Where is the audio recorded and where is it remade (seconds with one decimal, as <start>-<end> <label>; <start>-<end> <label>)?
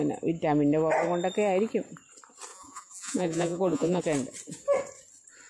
0.0-2.5 recorded; 2.5-4.0 remade; 4.0-5.5 recorded